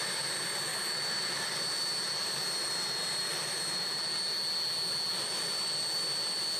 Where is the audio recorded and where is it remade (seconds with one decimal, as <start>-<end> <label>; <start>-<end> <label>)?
0.0-6.6 recorded